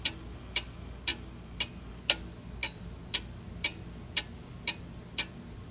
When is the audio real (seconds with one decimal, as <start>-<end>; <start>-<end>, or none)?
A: 0.0-5.7